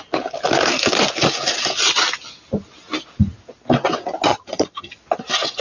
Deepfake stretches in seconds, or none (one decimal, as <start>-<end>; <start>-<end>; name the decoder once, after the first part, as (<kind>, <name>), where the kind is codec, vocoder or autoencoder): 4.3-4.9 (vocoder, HiFi-GAN)